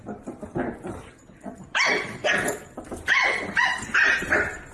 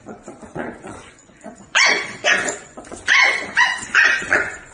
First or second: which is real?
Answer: first